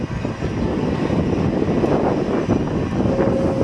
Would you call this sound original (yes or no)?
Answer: yes